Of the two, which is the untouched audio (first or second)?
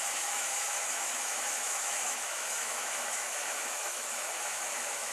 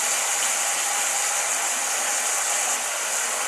second